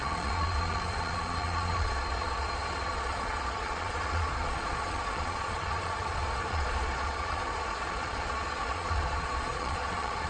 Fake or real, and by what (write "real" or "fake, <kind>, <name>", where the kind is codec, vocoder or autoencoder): fake, vocoder, Vocos